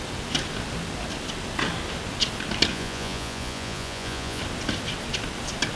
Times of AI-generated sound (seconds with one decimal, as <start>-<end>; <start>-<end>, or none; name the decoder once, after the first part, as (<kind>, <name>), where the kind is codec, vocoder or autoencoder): 2.7-4.4 (vocoder, Vocos)